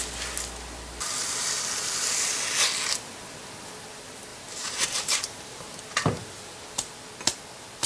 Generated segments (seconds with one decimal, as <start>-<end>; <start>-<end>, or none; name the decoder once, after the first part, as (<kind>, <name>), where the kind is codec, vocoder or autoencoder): 4.3-5.4 (vocoder, BigVGAN v2)